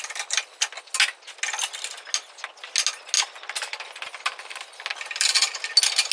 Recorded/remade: recorded